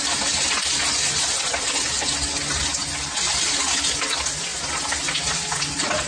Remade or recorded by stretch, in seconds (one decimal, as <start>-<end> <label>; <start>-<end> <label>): 0.0-6.1 recorded

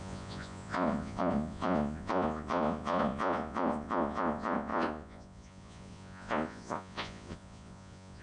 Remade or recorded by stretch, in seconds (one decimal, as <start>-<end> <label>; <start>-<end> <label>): 0.0-8.2 remade

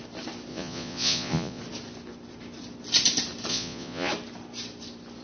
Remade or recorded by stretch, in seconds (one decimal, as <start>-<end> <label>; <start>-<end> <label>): 0.0-0.5 recorded; 0.5-1.6 remade; 1.6-3.5 recorded; 3.5-4.1 remade; 4.1-5.2 recorded